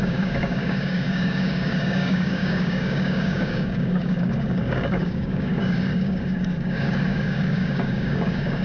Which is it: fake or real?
fake